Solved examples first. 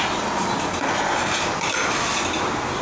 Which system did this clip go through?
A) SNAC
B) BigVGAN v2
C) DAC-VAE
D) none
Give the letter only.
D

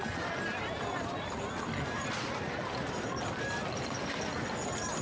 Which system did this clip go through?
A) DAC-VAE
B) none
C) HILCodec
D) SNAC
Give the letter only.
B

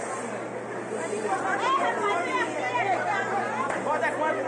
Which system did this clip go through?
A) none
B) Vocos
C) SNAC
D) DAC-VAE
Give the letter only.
A